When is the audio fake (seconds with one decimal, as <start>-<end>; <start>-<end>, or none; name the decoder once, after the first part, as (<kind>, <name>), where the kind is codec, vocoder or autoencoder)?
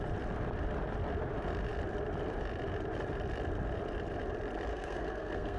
4.7-5.6 (codec, SNAC)